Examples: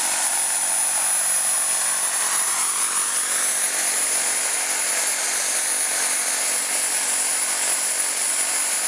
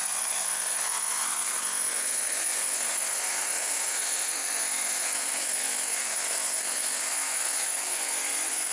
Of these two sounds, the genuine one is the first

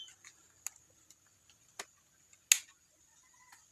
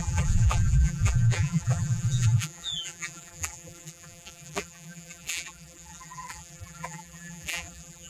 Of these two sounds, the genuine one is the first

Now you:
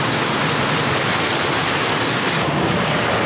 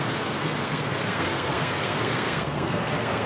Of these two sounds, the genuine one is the first